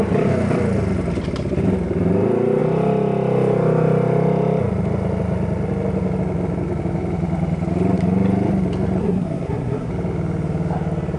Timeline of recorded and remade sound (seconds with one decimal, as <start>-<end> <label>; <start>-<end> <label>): 0.0-9.0 recorded; 9.0-9.9 remade; 9.9-11.2 recorded